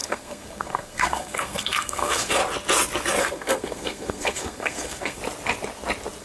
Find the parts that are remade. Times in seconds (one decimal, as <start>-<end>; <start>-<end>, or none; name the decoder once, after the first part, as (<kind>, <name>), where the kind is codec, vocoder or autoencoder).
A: 0.0-2.4 (codec, SNAC); 3.2-5.2